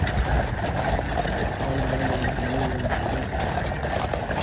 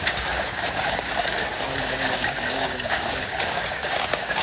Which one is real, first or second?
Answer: first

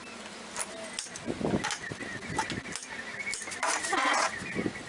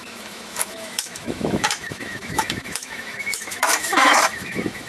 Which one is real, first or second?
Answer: first